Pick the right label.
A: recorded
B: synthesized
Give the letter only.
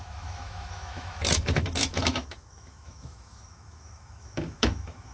B